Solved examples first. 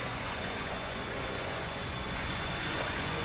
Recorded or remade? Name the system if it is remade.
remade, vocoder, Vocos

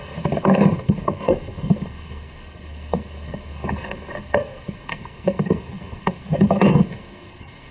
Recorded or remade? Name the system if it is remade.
remade, codec, SNAC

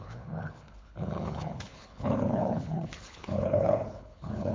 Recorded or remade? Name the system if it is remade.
remade, codec, HILCodec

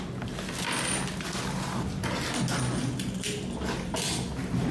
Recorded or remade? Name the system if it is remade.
recorded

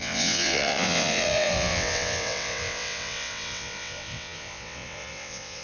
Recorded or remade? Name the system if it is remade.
remade, vocoder, WaveNeXt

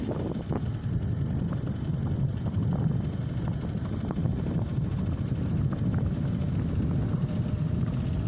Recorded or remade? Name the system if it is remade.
recorded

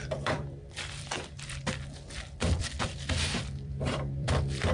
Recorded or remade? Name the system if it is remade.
remade, vocoder, BigVGAN v2